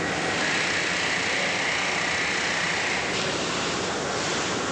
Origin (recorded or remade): recorded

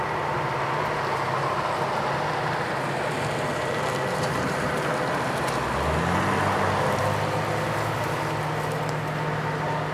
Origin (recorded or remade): recorded